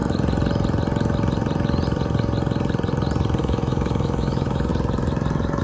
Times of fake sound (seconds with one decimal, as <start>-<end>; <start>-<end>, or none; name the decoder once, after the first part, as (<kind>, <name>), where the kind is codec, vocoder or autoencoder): 3.4-4.7 (autoencoder, DAC-VAE)